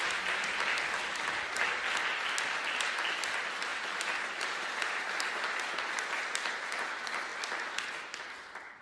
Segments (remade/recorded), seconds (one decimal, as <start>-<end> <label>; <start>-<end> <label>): 0.0-3.7 recorded; 3.7-5.1 remade; 5.1-8.8 recorded